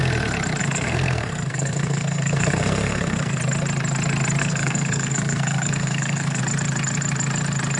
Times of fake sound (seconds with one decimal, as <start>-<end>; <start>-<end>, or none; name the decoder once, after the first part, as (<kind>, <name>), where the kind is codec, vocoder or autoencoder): 0.6-3.4 (codec, SNAC); 4.4-6.4